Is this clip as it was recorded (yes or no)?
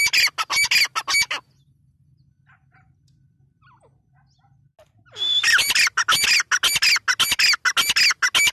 yes